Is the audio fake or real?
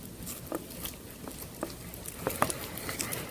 real